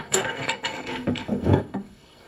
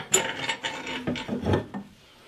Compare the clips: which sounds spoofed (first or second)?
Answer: first